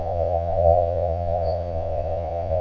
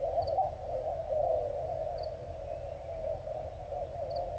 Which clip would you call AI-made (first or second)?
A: first